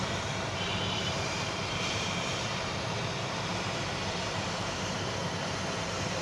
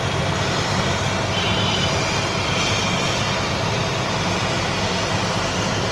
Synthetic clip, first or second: first